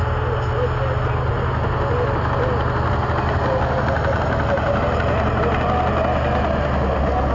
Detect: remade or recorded recorded